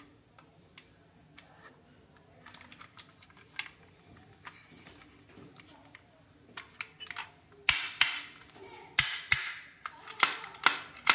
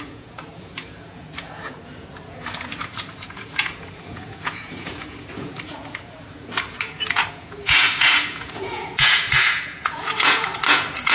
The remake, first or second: second